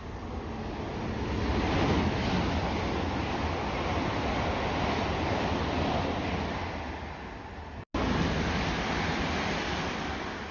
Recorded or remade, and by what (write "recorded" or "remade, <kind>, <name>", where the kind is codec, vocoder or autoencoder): recorded